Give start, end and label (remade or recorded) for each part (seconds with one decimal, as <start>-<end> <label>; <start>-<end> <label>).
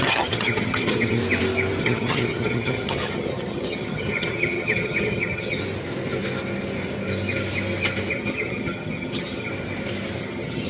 0.0-1.2 remade; 1.2-1.8 recorded; 1.8-5.6 remade; 5.6-8.1 recorded; 8.1-9.5 remade; 9.5-10.2 recorded; 10.2-10.7 remade